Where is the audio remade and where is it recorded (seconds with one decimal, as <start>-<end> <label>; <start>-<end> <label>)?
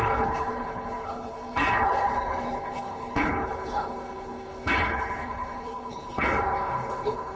0.0-7.4 remade